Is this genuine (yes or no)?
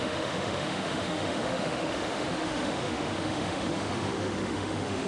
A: no